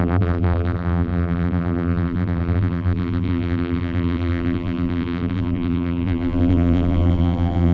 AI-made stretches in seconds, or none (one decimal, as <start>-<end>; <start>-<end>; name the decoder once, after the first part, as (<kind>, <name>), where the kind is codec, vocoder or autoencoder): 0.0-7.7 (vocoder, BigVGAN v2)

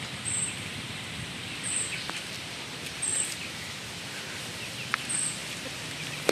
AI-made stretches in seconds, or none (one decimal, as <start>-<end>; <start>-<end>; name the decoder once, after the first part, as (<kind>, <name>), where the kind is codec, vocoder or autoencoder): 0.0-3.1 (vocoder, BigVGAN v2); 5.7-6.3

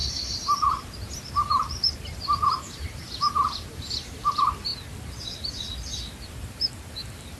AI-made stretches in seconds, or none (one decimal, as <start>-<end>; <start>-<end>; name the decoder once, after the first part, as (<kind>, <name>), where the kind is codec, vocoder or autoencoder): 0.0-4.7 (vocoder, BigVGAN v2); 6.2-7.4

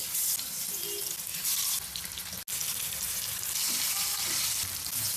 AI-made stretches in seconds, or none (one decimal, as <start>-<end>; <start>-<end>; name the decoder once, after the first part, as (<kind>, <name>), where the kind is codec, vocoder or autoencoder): 1.3-2.0 (vocoder, BigVGAN v2)

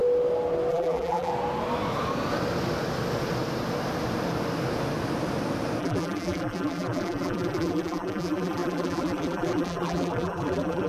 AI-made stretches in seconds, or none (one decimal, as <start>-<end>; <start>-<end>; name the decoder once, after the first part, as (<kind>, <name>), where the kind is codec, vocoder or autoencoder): 0.7-1.3 (vocoder, BigVGAN v2); 5.8-10.9

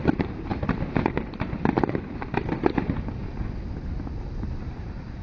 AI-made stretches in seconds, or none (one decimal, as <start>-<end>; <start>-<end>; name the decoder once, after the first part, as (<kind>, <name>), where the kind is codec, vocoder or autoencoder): 0.0-3.2 (vocoder, BigVGAN v2); 3.9-5.2